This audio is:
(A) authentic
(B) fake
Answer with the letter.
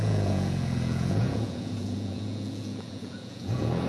B